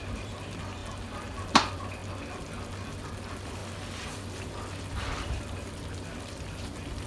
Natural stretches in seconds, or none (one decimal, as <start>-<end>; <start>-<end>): 0.8-1.5; 2.0-2.9